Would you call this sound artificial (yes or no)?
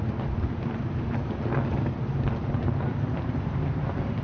no